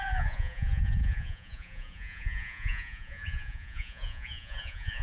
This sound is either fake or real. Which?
fake